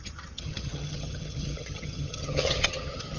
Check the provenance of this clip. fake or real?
fake